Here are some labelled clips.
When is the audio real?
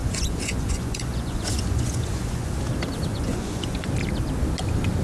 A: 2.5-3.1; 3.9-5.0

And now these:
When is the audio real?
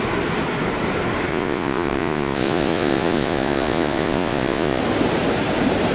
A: 0.0-1.3; 4.8-5.9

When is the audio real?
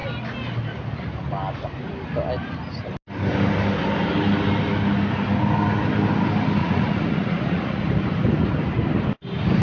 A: 0.0-6.6; 7.8-9.6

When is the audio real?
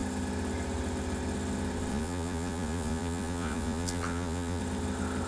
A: 0.0-1.9; 4.6-5.3